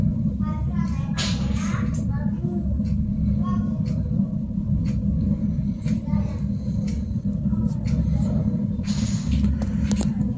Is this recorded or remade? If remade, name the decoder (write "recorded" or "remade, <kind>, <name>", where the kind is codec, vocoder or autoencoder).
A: recorded